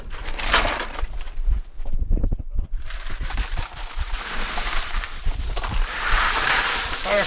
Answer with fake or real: fake